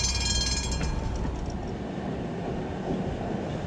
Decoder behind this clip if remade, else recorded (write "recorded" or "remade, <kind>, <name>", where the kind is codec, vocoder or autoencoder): recorded